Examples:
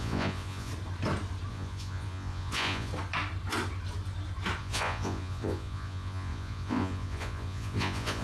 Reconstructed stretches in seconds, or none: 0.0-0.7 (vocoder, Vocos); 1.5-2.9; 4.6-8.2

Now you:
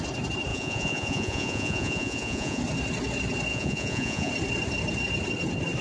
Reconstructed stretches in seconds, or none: 0.5-2.6 (vocoder, Vocos); 3.5-4.3

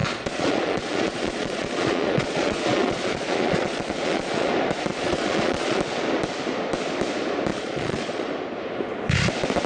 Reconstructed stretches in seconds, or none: 0.0-4.5 (vocoder, Vocos); 4.9-5.8; 7.5-8.3

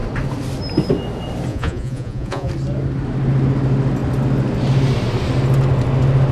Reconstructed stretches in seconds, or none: 1.5-2.5 (vocoder, Vocos)

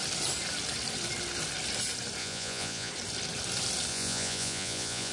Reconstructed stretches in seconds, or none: 2.2-2.9 (vocoder, Vocos); 3.9-5.1

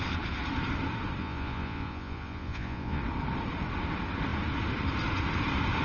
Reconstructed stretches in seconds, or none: 1.2-3.0 (vocoder, Vocos)